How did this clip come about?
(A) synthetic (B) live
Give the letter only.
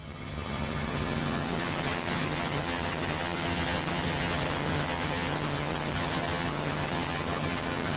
A